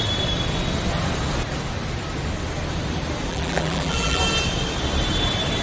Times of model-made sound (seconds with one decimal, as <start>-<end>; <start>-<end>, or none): 3.3-4.2